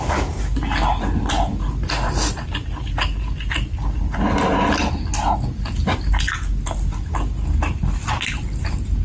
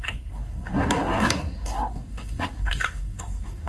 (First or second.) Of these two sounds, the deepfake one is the second